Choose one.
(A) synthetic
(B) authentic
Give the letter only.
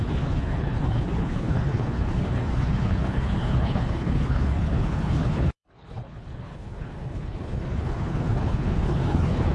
A